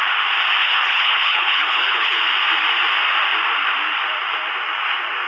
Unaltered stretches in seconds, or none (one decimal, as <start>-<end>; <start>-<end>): 0.0-0.6; 2.2-5.3